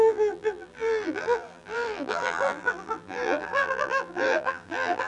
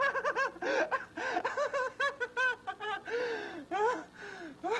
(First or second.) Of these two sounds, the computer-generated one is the first